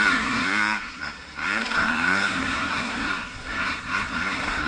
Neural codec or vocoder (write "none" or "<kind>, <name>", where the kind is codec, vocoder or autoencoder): codec, SNAC